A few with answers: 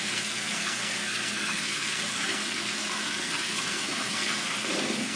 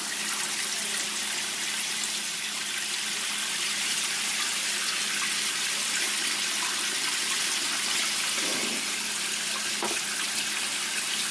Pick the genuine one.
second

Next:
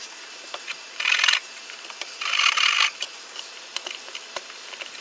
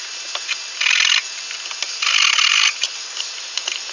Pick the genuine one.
second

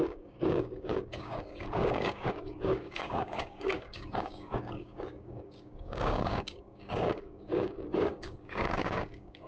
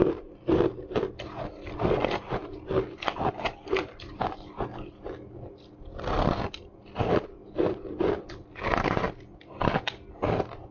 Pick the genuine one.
second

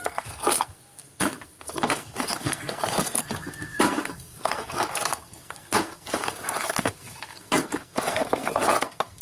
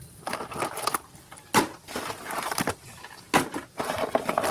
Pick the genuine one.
second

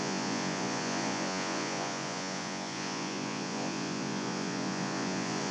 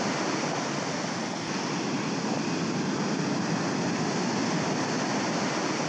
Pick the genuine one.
second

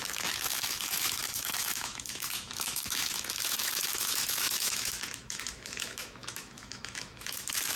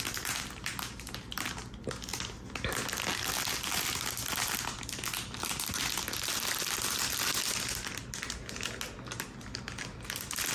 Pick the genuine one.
second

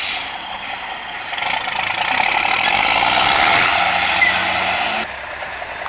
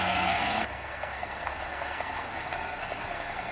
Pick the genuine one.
first